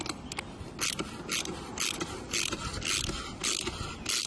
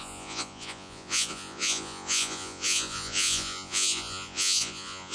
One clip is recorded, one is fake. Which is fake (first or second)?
second